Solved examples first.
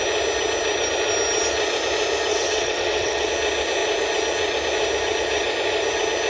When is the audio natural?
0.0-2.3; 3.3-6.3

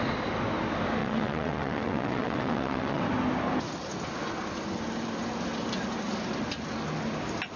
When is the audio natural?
0.0-1.0; 3.0-7.6

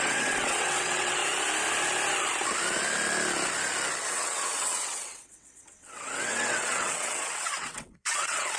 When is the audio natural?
1.2-4.1